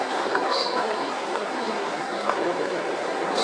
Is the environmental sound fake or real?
fake